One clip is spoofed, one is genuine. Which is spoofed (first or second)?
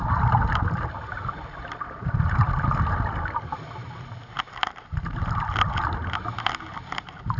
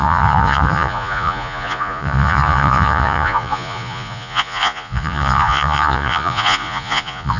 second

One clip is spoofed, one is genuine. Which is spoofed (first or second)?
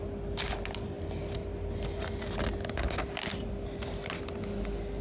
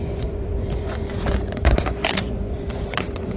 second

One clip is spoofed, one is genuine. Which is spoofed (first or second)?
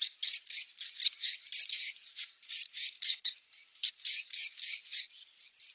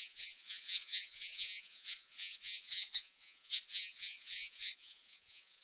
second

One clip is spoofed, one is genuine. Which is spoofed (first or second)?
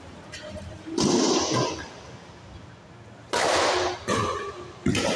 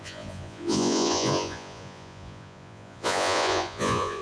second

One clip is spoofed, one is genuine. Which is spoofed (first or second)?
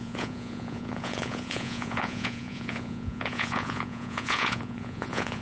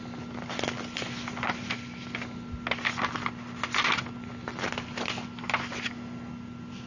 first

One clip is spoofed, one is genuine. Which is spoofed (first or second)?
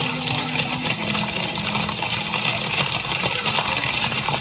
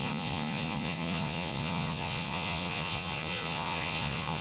second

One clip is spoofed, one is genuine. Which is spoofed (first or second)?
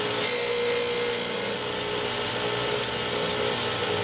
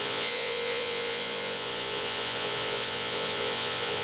second